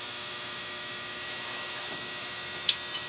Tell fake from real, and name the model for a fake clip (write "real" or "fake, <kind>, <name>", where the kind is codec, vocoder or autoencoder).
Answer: fake, autoencoder, DAC-VAE